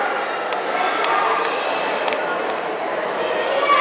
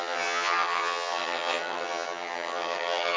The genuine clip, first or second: first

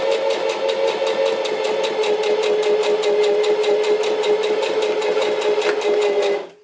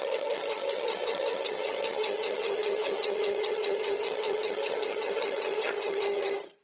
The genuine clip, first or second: first